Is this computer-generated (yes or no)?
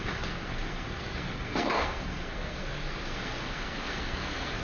yes